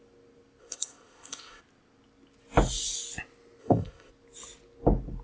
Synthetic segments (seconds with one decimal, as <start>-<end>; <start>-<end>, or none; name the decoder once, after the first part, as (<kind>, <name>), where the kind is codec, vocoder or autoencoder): 0.6-1.6 (codec, ZipCodec); 3.6-4.1